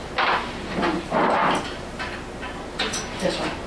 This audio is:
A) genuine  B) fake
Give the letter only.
A